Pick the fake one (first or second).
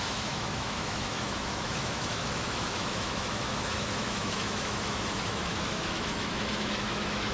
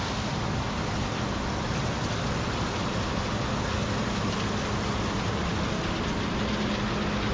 first